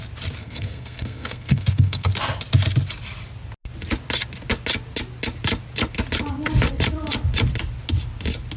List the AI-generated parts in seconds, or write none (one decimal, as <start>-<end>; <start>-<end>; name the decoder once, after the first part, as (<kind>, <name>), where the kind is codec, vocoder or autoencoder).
0.4-2.1 (codec, SNAC)